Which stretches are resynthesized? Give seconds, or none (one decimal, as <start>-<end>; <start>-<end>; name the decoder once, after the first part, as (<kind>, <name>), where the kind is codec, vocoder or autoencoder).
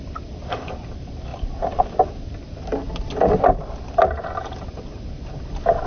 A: none